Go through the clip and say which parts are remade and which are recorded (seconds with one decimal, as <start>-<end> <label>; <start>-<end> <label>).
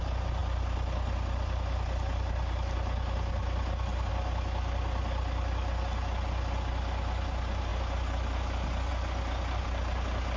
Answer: 0.0-10.4 recorded